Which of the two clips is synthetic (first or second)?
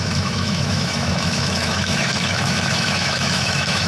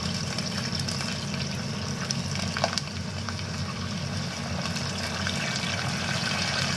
first